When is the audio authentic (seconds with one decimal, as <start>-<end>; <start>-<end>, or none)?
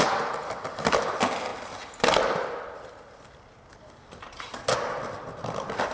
0.0-3.7; 4.5-5.9